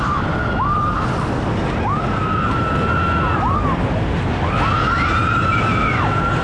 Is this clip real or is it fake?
real